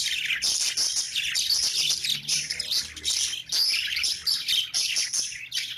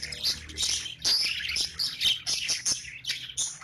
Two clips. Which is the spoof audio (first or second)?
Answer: first